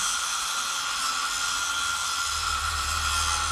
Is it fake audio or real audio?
real